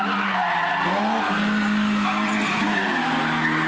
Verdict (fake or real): real